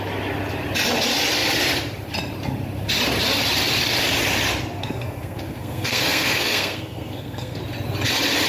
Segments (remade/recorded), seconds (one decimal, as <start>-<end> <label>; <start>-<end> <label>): 0.0-4.8 recorded; 4.8-7.6 remade; 7.6-8.5 recorded